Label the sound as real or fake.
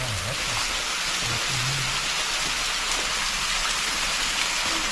real